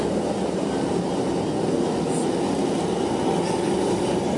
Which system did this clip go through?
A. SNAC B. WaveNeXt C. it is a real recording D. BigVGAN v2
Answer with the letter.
C